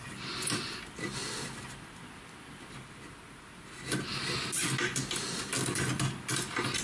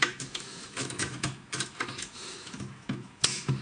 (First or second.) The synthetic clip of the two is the second